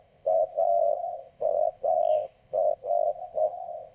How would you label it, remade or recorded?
remade